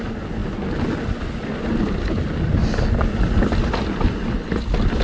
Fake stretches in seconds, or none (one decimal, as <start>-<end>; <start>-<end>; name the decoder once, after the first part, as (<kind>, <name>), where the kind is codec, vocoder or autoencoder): none